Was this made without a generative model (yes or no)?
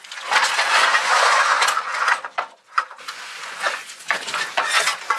no